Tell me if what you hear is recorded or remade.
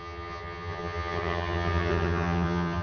remade